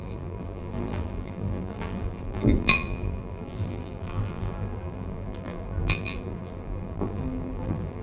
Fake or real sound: fake